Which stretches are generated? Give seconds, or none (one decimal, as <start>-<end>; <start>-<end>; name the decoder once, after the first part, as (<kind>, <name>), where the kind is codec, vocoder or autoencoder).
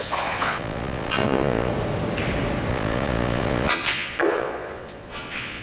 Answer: 0.0-1.7 (vocoder, Vocos); 2.7-5.6